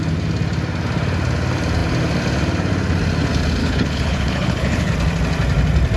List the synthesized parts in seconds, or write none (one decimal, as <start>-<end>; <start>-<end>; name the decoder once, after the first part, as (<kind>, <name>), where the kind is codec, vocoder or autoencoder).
3.6-4.9 (codec, HILCodec)